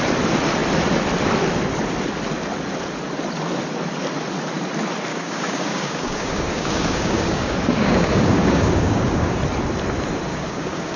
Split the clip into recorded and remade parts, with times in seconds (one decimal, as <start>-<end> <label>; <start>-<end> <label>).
0.0-5.1 recorded; 5.1-9.4 remade; 9.4-10.3 recorded; 10.3-11.0 remade